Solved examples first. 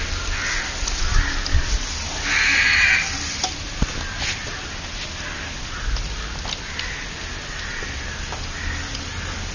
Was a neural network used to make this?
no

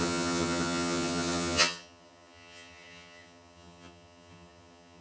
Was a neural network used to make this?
yes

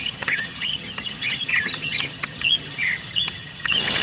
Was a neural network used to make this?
yes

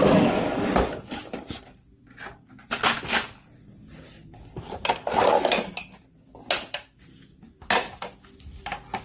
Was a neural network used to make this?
no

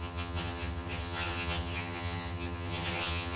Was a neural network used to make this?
yes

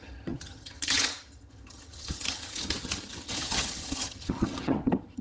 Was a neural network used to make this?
yes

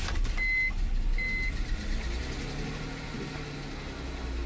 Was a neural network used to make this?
no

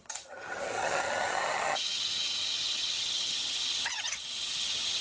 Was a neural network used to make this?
yes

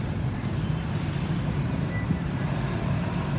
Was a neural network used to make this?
no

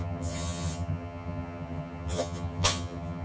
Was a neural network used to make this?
yes